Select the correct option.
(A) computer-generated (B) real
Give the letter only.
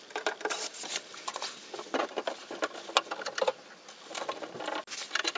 B